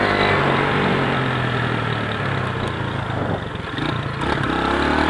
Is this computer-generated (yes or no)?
no